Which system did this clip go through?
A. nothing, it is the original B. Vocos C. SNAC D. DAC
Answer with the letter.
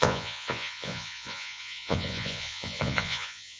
B